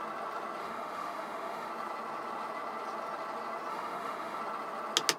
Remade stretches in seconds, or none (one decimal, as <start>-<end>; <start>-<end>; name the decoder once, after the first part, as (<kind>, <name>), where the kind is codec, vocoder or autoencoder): 0.6-1.7 (autoencoder, DAC-VAE); 3.7-4.4